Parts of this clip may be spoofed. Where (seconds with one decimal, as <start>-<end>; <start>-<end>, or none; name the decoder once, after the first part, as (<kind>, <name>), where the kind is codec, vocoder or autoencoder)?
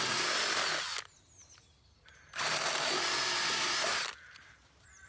none